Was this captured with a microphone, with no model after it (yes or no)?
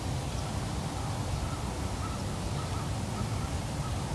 yes